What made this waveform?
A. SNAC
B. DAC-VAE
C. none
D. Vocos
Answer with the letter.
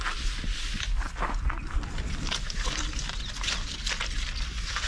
C